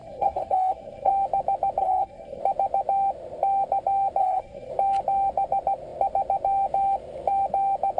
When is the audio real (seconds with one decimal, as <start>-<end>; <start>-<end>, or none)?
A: 1.1-1.8; 2.4-4.2; 4.7-8.0